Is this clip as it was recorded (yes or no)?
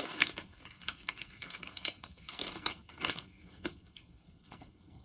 no